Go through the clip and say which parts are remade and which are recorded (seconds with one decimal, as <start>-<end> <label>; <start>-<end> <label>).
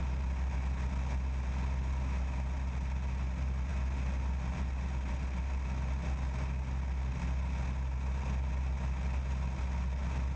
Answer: 0.0-10.4 recorded